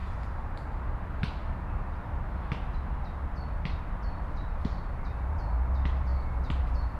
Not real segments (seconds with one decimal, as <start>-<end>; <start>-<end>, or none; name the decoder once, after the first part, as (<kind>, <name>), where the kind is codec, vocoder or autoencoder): 0.0-0.8 (vocoder, BigVGAN v2); 6.1-6.6